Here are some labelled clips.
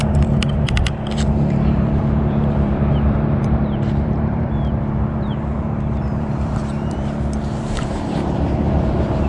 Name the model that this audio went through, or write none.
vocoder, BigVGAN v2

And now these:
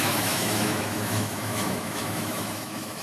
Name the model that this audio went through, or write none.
autoencoder, DAC-VAE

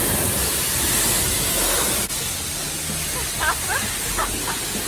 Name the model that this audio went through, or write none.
none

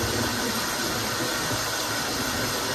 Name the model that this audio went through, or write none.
vocoder, BigVGAN v2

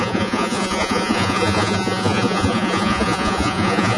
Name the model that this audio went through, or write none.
vocoder, Vocos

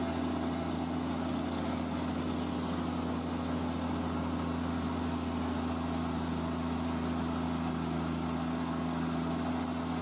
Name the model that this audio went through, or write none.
none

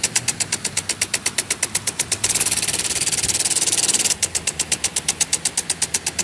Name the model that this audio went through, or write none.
none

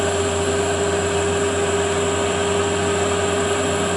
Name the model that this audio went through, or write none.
none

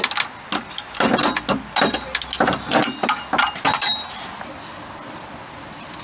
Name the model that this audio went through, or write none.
none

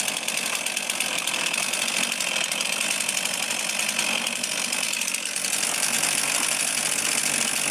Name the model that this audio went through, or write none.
none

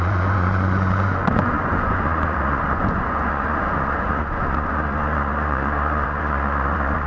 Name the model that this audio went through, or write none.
vocoder, Vocos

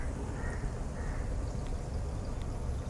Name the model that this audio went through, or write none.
none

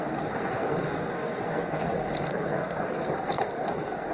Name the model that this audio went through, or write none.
codec, SNAC